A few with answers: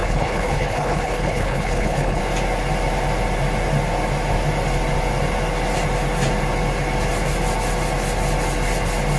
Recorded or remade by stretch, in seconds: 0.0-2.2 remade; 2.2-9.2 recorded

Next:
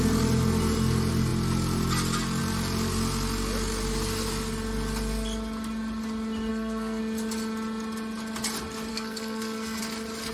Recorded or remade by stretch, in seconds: 0.0-6.5 recorded; 6.5-7.0 remade; 7.0-8.9 recorded; 8.9-9.8 remade; 9.8-10.3 recorded

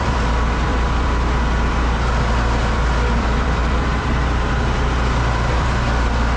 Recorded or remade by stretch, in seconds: 0.0-6.4 remade

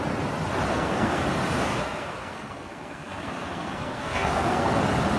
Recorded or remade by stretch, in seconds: 0.0-0.7 recorded; 0.7-1.2 remade; 1.2-1.7 recorded; 1.7-4.8 remade; 4.8-5.2 recorded

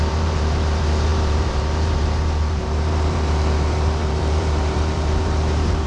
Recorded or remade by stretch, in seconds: 0.0-5.9 remade